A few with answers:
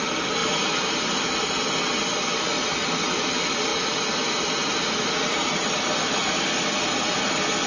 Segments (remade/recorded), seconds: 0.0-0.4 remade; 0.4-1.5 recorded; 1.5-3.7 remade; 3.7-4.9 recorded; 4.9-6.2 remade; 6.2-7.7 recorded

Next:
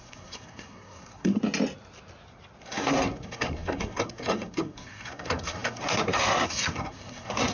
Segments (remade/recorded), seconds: 0.0-1.4 remade; 1.4-2.6 recorded; 2.6-7.5 remade

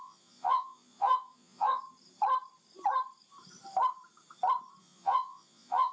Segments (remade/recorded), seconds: 0.0-1.8 remade; 1.8-4.8 recorded; 4.8-5.9 remade

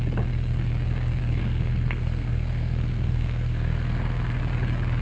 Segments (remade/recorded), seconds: 0.0-1.4 recorded; 1.4-4.4 remade; 4.4-5.0 recorded

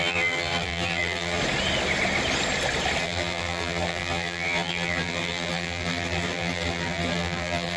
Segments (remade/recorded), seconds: 0.0-1.4 remade; 1.4-3.0 recorded; 3.0-7.8 remade

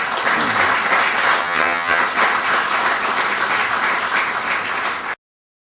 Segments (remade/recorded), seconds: 0.0-1.4 recorded; 1.4-2.0 remade; 2.0-5.6 recorded